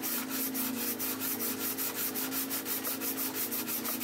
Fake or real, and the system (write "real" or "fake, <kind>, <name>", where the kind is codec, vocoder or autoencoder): real